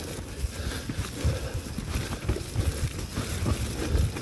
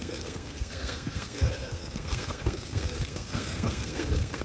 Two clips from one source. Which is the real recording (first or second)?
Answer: first